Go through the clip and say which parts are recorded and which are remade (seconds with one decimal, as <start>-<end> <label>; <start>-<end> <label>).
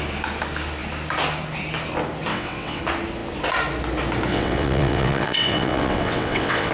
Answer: 0.0-2.3 recorded; 2.3-2.8 remade; 2.8-4.3 recorded; 4.3-6.7 remade